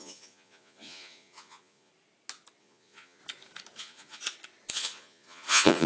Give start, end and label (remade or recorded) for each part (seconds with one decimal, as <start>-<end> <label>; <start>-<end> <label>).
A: 0.0-1.9 remade; 1.9-2.6 recorded; 2.6-3.2 remade; 3.2-3.8 recorded; 3.8-4.2 remade; 4.2-4.7 recorded; 4.7-5.9 remade